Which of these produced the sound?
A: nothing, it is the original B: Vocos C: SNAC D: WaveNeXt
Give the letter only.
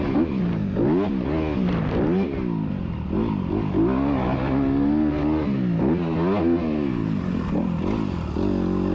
A